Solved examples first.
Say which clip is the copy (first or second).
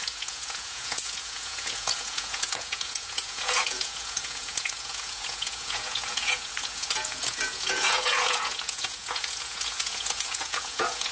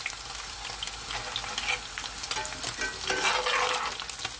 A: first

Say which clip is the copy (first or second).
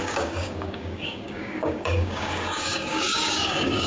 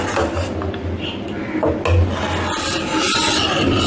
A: first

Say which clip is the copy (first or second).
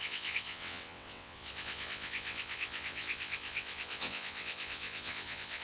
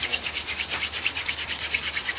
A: first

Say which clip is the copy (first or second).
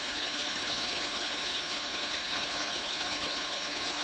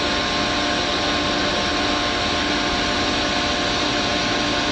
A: first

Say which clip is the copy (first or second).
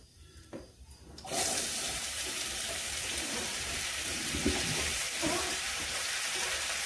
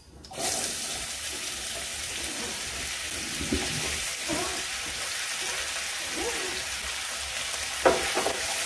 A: first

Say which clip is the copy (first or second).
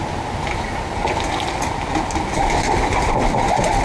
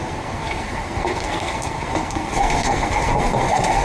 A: second